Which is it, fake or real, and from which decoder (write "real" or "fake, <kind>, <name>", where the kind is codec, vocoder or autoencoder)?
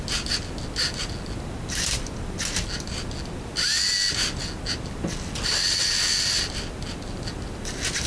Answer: real